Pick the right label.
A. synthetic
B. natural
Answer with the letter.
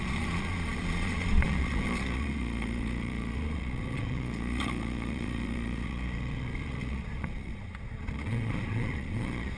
A